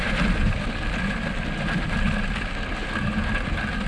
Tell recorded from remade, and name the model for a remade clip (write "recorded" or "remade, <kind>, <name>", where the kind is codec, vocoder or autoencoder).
recorded